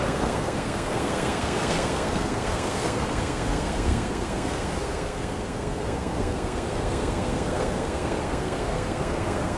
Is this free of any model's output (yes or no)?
no